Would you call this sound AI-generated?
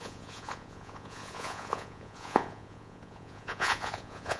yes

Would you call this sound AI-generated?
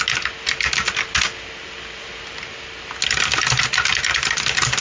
no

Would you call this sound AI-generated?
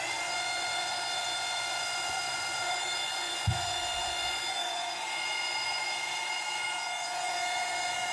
yes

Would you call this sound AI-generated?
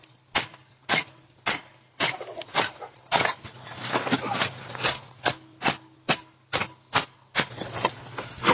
no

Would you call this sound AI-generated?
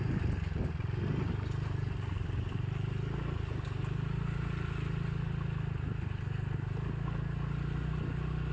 no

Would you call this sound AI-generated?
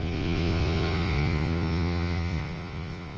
yes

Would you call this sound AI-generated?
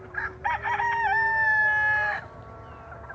no